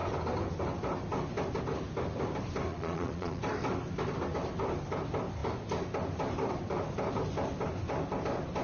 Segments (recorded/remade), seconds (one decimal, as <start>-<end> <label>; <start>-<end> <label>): 0.0-2.7 recorded; 2.7-3.4 remade; 3.4-8.6 recorded